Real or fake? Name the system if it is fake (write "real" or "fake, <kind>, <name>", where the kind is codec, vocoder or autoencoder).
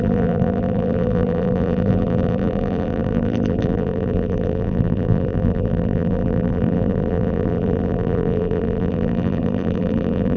fake, vocoder, BigVGAN v2